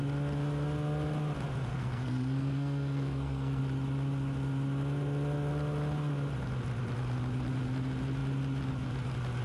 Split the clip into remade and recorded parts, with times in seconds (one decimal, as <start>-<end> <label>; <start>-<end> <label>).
0.0-1.7 recorded; 1.7-3.6 remade; 3.6-9.4 recorded